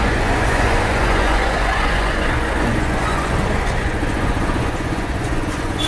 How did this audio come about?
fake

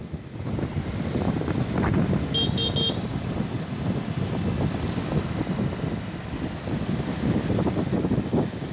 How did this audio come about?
real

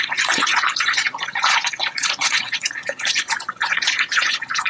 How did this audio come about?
fake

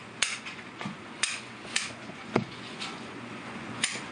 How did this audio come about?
fake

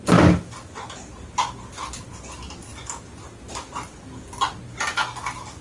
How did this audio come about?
real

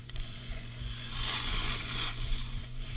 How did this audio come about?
fake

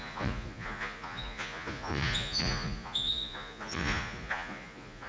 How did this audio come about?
fake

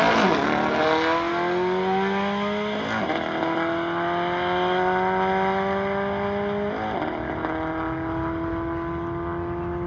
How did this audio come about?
real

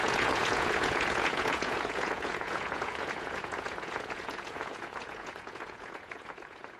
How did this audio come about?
fake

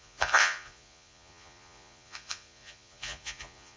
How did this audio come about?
fake